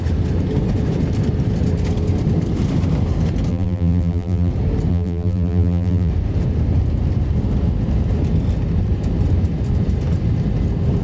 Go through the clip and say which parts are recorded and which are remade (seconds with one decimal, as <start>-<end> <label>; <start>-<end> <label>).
0.0-3.5 recorded; 3.5-4.5 remade; 4.5-4.9 recorded; 4.9-6.1 remade; 6.1-11.0 recorded